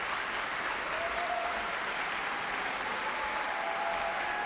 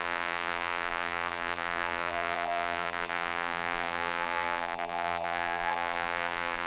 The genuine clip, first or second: first